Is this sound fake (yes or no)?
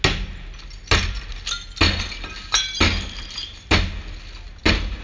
no